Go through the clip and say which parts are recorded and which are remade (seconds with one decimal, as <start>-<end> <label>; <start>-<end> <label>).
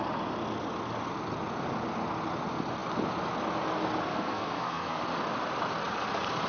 0.0-4.1 recorded; 4.1-5.0 remade; 5.0-6.5 recorded